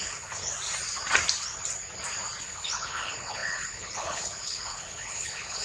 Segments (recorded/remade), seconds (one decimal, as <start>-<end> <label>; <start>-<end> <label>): 0.0-0.5 remade; 0.5-2.4 recorded; 2.4-5.6 remade